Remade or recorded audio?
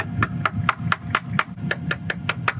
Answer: recorded